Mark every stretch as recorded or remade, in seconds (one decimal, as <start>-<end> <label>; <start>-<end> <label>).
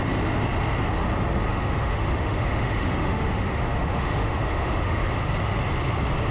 0.0-1.5 recorded; 1.5-5.3 remade; 5.3-6.3 recorded